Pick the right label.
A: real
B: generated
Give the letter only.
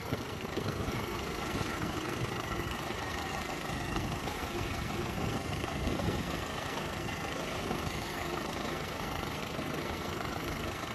B